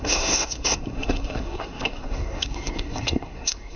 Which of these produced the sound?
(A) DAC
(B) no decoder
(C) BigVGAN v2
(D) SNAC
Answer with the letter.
D